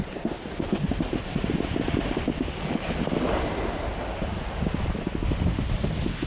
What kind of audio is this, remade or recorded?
recorded